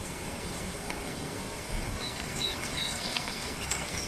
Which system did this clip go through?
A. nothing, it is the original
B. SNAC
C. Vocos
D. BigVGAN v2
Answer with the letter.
B